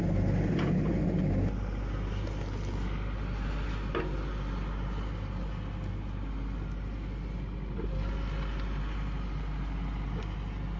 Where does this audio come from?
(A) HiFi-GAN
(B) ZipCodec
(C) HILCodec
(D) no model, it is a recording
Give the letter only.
D